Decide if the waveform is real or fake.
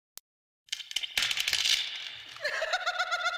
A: real